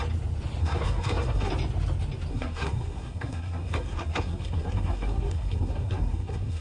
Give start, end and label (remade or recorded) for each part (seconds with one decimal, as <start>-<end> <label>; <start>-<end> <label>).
0.0-0.6 recorded; 0.6-1.5 remade; 1.5-2.3 recorded; 2.3-6.6 remade